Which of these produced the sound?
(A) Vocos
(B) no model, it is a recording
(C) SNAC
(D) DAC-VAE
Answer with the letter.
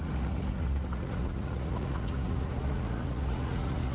A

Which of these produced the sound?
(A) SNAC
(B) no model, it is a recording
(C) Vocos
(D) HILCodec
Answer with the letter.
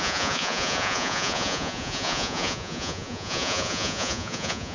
C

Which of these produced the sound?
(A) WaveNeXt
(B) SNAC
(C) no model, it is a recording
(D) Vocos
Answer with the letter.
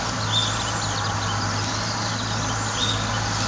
C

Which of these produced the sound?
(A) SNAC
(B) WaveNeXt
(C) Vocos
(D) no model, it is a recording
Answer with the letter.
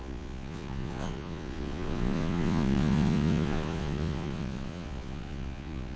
C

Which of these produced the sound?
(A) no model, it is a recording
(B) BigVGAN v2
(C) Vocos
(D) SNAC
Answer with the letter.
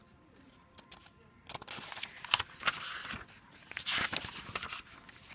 A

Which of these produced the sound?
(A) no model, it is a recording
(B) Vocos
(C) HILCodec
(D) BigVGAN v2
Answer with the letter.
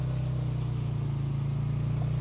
A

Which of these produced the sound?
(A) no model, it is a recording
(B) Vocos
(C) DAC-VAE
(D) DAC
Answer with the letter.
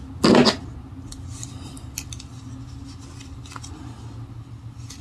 A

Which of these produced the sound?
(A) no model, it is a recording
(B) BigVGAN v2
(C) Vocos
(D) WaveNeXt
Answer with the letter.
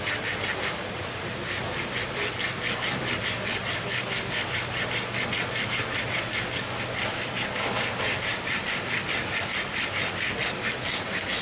A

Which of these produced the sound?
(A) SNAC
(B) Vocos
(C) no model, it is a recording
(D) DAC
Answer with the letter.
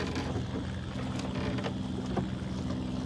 C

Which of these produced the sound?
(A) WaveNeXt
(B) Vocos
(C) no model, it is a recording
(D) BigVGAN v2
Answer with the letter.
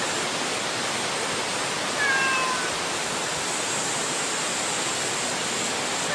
C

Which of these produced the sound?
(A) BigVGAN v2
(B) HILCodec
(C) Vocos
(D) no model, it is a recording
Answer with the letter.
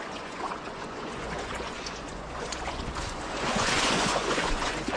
C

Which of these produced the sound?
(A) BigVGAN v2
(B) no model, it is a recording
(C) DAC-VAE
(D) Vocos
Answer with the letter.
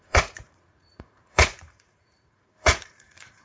D